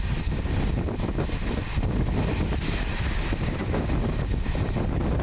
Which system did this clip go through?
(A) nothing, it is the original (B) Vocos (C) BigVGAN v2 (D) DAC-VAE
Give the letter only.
A